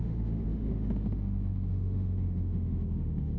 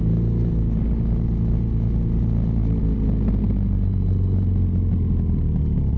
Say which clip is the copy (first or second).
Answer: first